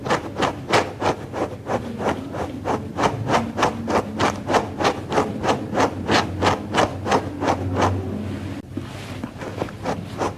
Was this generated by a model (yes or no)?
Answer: no